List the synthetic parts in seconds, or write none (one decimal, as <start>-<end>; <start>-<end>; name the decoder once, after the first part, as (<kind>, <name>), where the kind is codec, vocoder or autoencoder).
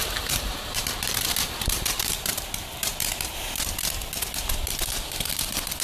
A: 0.0-3.5 (vocoder, BigVGAN v2)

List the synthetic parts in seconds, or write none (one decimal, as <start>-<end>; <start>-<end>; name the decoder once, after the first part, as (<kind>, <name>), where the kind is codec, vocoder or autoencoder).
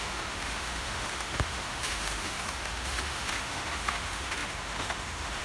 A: 0.0-5.4 (autoencoder, DAC-VAE)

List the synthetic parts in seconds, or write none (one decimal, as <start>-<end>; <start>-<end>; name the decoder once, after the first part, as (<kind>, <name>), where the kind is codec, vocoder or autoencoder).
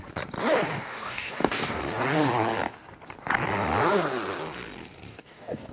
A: 0.7-1.8 (codec, DAC); 5.1-5.7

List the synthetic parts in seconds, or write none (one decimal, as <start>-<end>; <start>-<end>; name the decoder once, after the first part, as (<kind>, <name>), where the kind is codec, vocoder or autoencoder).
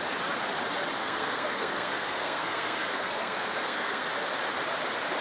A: 1.0-4.1 (codec, SNAC)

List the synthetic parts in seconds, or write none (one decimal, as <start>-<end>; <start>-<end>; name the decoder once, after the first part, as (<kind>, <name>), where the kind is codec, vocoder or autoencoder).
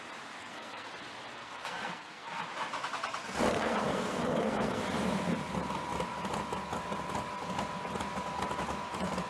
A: 0.4-0.9 (codec, SNAC); 1.3-2.4; 3.5-4.8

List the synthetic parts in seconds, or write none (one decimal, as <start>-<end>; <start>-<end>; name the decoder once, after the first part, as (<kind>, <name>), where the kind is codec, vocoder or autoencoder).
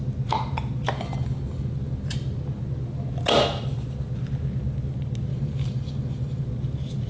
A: 5.3-6.4 (vocoder, BigVGAN v2)